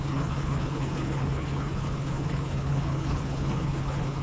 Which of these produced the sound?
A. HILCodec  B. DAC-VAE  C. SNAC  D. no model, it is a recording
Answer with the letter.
A